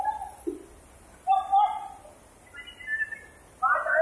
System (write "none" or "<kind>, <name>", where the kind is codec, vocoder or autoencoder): none